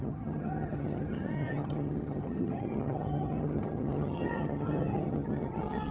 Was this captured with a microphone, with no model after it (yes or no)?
no